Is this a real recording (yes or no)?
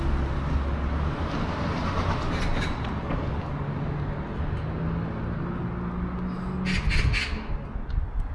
yes